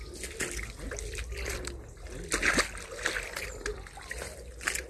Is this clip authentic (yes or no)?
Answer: yes